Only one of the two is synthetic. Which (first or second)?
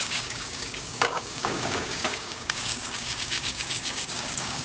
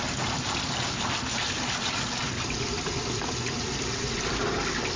first